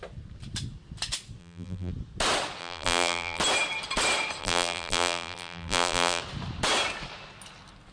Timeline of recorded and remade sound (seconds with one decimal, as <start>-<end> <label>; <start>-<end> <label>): 0.0-1.4 recorded; 1.4-1.9 remade; 1.9-2.6 recorded; 2.6-3.4 remade; 3.4-4.4 recorded; 4.4-6.2 remade; 6.2-7.9 recorded